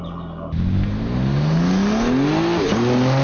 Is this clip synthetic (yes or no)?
no